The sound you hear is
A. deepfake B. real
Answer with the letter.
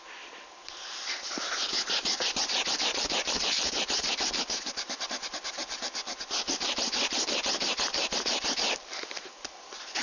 A